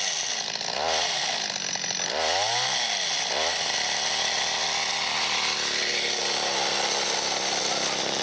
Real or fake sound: real